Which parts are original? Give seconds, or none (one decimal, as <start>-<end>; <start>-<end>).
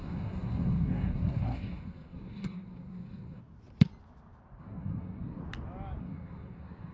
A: 3.4-4.6; 5.4-6.0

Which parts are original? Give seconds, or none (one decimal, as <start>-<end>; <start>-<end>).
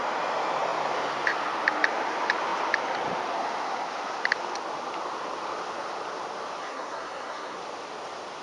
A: 0.0-6.6; 7.6-8.4